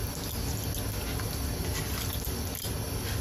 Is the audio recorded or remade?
recorded